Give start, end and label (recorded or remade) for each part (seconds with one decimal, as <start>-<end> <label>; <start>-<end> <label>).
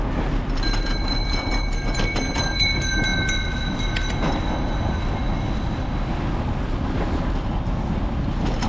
0.0-8.7 recorded